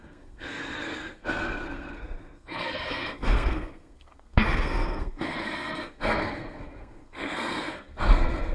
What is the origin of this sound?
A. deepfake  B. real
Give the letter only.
A